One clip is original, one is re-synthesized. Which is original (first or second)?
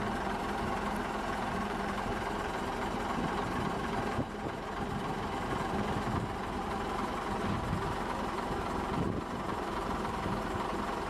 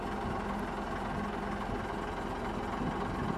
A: second